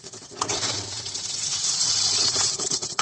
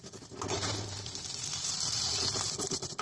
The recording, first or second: second